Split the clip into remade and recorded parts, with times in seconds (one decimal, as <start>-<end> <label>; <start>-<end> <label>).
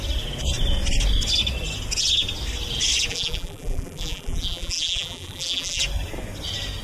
0.0-3.1 recorded; 3.1-5.8 remade; 5.8-6.8 recorded